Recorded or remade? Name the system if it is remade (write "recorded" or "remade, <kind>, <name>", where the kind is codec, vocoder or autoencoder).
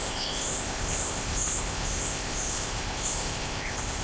remade, codec, ZipCodec